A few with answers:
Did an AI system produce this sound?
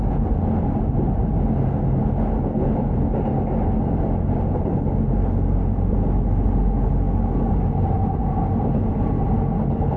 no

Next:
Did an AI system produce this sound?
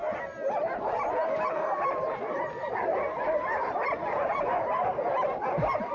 no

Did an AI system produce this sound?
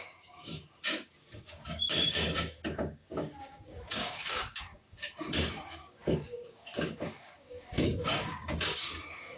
yes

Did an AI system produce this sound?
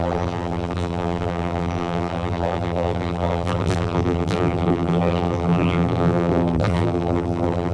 yes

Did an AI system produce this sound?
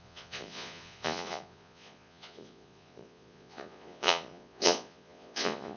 yes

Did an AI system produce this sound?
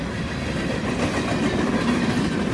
no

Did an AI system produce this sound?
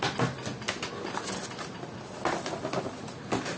no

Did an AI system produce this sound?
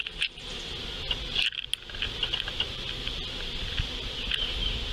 no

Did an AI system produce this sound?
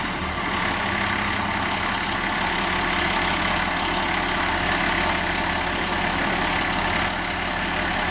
no